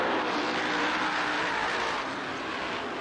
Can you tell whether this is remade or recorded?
recorded